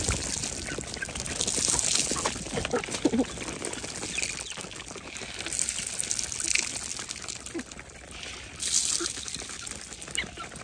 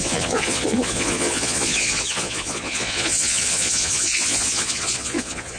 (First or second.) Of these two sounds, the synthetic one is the second